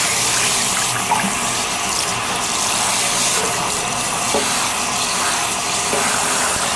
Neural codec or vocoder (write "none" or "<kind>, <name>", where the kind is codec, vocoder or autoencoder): none